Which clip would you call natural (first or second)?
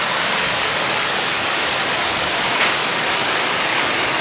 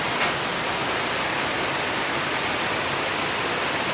second